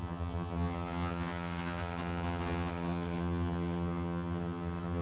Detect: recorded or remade remade